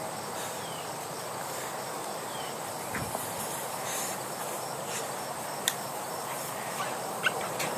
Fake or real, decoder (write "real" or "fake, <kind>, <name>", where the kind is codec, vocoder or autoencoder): fake, vocoder, BigVGAN v2